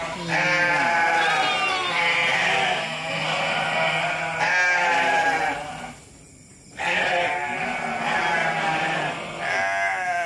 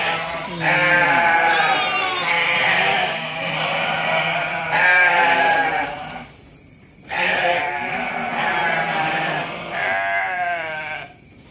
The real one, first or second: first